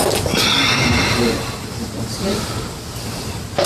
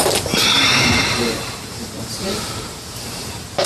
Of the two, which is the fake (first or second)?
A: second